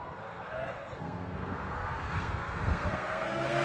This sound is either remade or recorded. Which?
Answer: remade